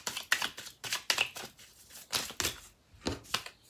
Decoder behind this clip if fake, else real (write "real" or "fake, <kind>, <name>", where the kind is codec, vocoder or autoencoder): real